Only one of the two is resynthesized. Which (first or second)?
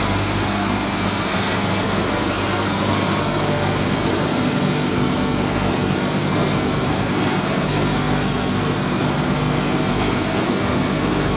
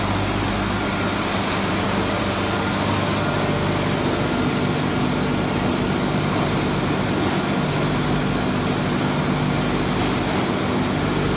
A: first